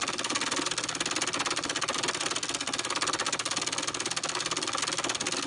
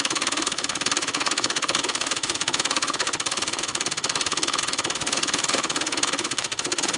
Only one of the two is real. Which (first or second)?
first